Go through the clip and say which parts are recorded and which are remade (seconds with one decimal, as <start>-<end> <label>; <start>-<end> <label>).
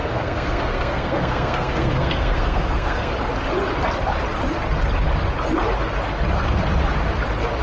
0.0-3.1 remade; 3.1-7.6 recorded